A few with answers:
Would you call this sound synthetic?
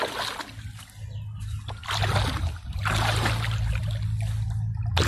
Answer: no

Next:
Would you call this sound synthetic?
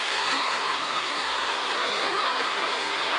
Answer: yes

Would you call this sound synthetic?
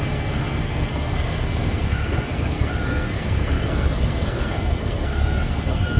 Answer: yes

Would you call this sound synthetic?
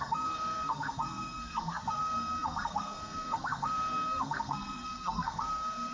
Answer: yes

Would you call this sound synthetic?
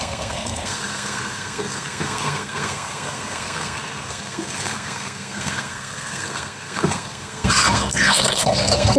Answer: yes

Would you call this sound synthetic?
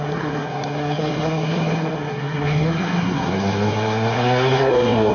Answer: yes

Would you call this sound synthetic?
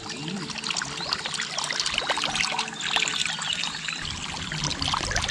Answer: no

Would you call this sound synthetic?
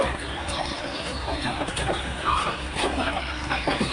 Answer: yes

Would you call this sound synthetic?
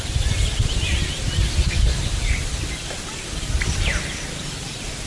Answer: no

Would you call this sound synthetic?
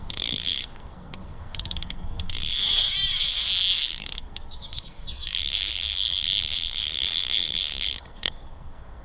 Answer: yes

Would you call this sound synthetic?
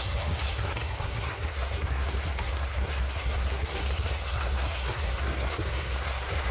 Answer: yes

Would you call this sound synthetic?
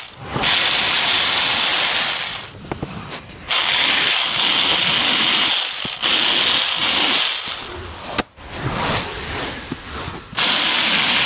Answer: no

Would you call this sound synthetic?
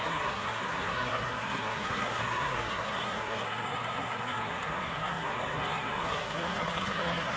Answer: yes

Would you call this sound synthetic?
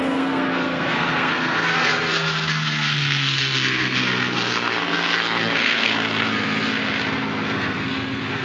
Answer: yes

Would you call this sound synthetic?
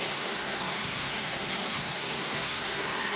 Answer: yes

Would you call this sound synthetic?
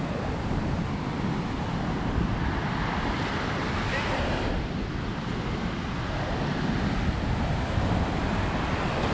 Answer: no